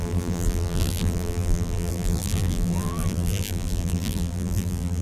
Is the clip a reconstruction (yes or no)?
yes